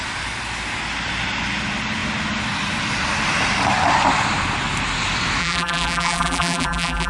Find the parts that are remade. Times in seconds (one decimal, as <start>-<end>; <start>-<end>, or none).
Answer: 5.4-7.1